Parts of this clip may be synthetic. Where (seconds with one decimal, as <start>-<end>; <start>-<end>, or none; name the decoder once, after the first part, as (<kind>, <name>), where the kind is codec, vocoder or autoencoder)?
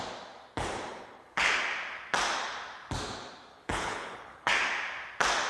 0.9-1.6 (codec, HILCodec); 3.5-4.5